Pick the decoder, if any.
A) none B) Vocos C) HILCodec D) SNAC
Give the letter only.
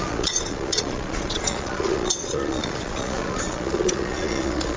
B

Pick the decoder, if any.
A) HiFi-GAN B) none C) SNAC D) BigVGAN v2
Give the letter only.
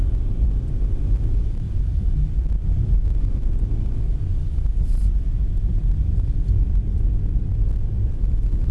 D